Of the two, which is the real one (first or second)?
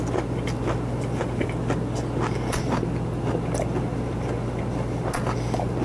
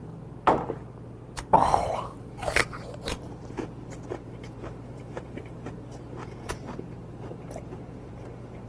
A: first